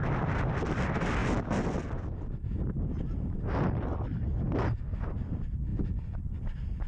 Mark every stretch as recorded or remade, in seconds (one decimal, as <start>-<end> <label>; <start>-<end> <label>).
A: 0.0-6.9 recorded